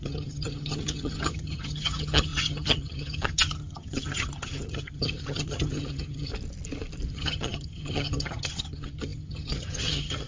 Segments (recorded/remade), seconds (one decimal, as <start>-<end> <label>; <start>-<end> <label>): 0.0-6.3 remade; 6.3-7.1 recorded; 7.1-10.3 remade